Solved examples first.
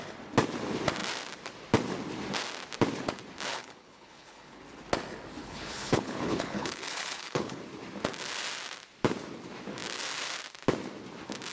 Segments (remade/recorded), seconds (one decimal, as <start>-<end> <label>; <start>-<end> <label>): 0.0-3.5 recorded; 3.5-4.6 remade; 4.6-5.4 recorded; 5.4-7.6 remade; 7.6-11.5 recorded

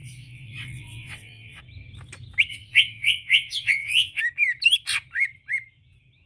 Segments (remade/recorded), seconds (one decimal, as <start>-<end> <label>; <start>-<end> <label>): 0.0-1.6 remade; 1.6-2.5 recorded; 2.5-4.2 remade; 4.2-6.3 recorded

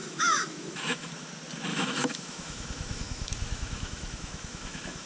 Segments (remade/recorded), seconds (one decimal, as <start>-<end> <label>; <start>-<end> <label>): 0.0-1.1 remade; 1.1-1.7 recorded; 1.7-5.1 remade